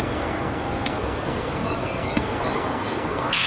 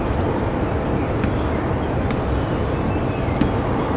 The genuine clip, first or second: second